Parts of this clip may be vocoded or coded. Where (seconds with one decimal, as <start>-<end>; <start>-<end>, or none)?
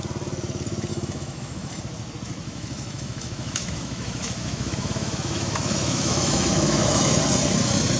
0.9-1.8; 2.4-7.2